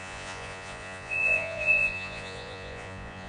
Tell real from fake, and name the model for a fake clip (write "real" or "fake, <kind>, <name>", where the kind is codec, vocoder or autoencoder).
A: fake, vocoder, Vocos